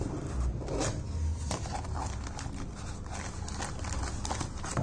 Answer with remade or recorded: recorded